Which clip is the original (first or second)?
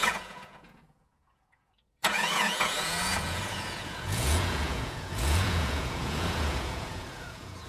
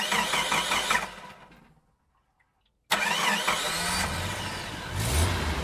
second